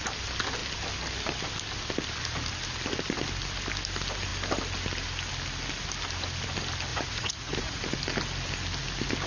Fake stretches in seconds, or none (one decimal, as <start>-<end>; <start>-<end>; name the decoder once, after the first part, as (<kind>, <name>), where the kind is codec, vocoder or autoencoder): 6.9-7.8 (vocoder, Vocos)